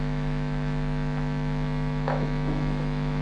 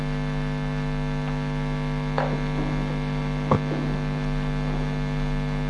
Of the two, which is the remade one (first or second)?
first